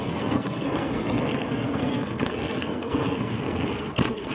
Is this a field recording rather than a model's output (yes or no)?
no